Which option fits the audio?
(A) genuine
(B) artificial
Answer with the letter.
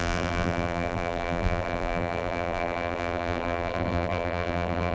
B